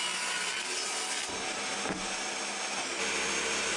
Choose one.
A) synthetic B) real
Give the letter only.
B